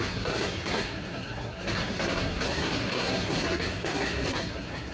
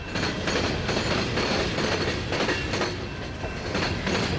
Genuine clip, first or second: second